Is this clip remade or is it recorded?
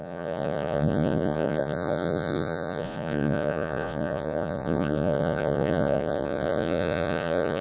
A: remade